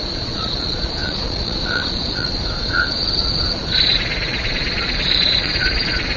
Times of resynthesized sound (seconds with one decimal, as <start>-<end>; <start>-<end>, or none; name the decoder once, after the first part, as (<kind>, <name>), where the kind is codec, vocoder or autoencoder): 0.0-6.2 (vocoder, Vocos)